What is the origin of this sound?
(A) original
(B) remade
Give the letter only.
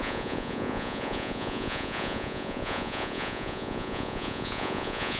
B